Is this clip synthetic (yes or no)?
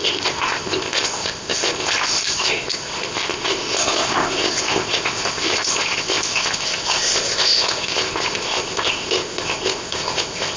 yes